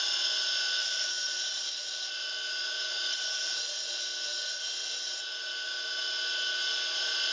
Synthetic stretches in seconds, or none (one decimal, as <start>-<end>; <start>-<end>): 0.8-4.0